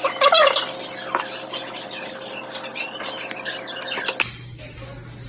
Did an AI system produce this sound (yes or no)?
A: no